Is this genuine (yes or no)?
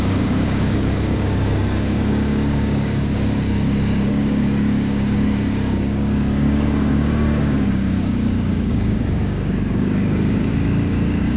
no